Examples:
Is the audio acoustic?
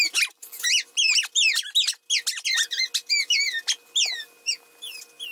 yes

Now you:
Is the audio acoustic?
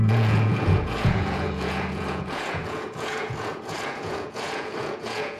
no